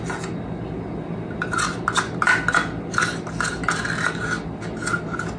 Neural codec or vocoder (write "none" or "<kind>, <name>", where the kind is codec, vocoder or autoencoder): none